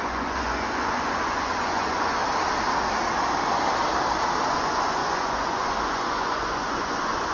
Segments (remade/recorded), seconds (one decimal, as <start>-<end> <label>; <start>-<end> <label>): 0.0-2.2 remade; 2.2-4.5 recorded; 4.5-7.3 remade